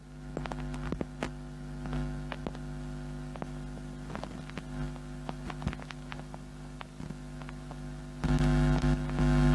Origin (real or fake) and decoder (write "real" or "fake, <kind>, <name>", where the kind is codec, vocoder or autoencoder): real